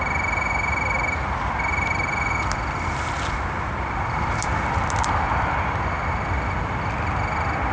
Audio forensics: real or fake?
real